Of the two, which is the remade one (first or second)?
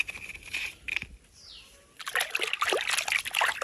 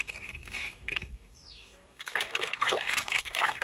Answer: second